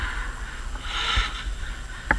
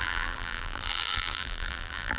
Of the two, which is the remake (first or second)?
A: second